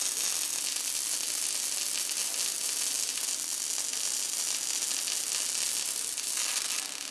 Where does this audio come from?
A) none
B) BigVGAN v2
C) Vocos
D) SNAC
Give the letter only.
A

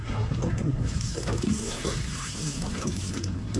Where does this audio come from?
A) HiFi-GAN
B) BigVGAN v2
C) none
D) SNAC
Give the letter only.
D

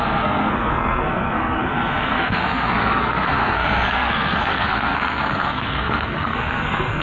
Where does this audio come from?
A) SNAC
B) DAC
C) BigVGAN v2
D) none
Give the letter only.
A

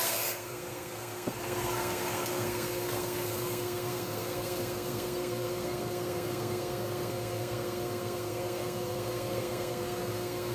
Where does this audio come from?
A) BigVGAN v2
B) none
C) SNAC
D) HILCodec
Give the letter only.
C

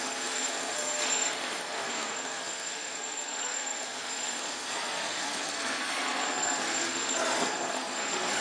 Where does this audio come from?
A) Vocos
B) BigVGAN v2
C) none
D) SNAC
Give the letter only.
D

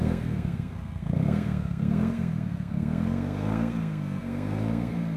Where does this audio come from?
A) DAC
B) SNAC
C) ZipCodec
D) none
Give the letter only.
B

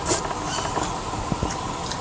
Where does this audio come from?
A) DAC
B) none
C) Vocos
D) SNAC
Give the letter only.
B